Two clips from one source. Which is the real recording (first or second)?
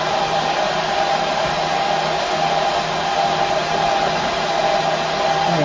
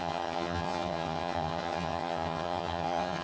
first